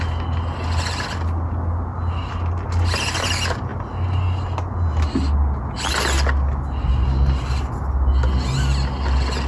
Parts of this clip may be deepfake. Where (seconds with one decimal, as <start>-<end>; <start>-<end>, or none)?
none